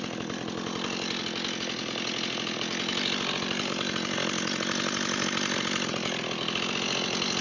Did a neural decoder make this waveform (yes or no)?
no